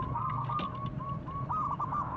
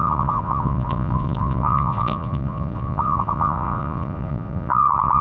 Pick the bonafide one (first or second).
first